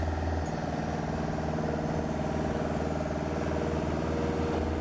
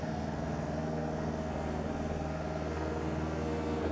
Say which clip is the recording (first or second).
first